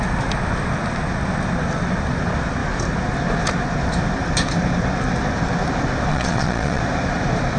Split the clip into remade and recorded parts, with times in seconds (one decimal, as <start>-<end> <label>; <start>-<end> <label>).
0.0-6.1 recorded; 6.1-6.8 remade; 6.8-7.6 recorded